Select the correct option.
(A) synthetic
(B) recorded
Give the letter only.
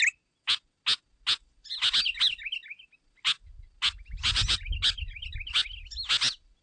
B